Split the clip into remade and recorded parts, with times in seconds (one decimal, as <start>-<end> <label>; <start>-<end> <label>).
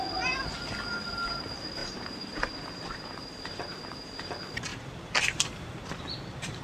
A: 0.0-1.8 recorded; 1.8-4.3 remade; 4.3-4.7 recorded; 4.7-6.6 remade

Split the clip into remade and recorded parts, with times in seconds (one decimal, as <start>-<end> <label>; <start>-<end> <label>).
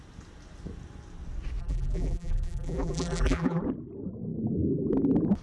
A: 0.0-1.6 recorded; 1.6-3.6 remade; 3.6-5.4 recorded